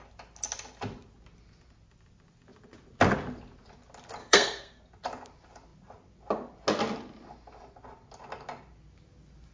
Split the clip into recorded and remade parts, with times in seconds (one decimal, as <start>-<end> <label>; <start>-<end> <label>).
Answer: 0.0-4.2 recorded; 4.2-4.8 remade; 4.8-9.5 recorded